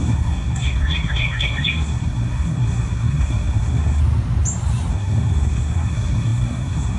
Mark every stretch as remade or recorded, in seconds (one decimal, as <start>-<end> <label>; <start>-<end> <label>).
0.0-4.0 remade; 4.0-4.9 recorded; 4.9-7.0 remade